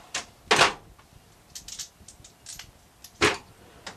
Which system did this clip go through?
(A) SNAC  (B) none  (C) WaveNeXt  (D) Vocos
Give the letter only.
B